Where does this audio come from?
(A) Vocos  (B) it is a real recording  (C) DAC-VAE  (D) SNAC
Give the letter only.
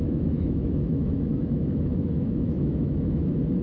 C